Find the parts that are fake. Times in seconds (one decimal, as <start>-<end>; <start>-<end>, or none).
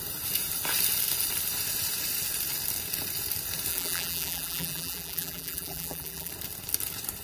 3.7-6.3